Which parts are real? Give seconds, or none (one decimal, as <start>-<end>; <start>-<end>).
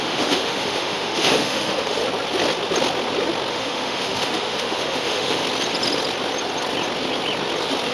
2.0-3.5; 5.4-7.9